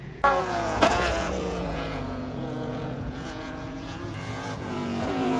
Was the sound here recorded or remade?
remade